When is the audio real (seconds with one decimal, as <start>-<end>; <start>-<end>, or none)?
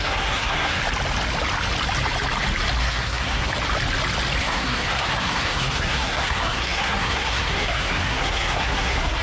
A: 0.8-2.8; 3.5-4.4